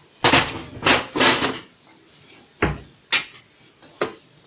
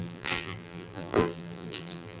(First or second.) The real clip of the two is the first